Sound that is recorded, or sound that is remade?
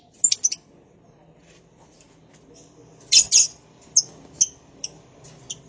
recorded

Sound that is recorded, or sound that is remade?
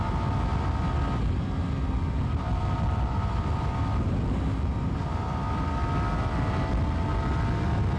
recorded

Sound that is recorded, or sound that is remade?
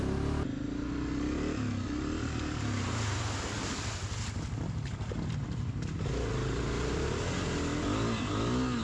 recorded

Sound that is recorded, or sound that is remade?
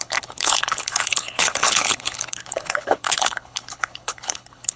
remade